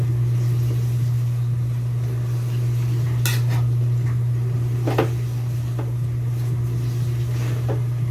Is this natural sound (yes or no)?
yes